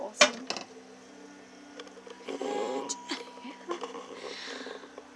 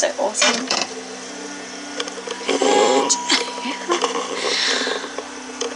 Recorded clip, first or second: first